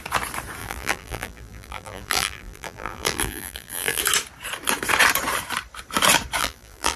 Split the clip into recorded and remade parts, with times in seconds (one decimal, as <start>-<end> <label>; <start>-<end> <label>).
0.0-0.6 recorded; 0.6-4.0 remade; 4.0-6.4 recorded; 6.4-7.0 remade